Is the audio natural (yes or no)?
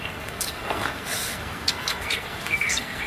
no